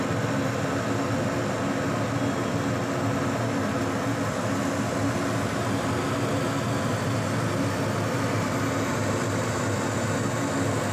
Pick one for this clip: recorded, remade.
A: recorded